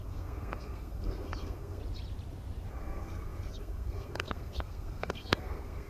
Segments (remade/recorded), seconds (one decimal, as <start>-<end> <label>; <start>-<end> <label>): 0.0-1.8 remade; 1.8-2.7 recorded; 2.7-5.9 remade